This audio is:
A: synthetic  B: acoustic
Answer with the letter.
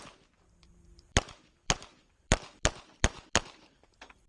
A